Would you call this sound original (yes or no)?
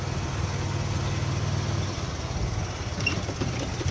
yes